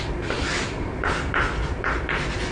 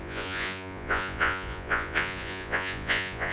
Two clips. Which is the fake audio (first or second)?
second